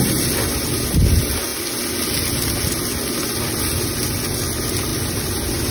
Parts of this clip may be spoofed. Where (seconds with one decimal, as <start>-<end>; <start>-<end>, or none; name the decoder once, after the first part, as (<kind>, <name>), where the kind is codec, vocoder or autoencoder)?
none